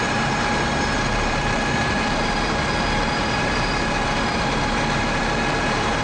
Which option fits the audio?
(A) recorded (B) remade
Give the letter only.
B